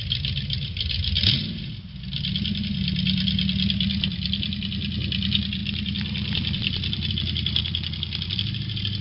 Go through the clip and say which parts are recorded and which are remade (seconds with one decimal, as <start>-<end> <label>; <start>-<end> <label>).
0.0-5.6 recorded; 5.6-7.1 remade; 7.1-9.0 recorded